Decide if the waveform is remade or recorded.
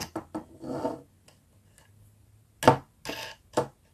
recorded